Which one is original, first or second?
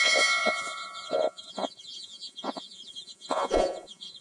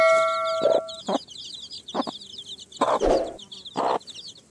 second